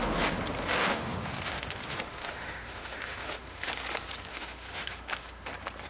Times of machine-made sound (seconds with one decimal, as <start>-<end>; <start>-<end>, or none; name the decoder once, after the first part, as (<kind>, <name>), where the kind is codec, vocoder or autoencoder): 0.8-3.7 (autoencoder, DAC-VAE); 4.3-5.5